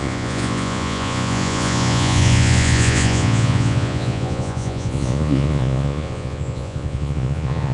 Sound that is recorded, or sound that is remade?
remade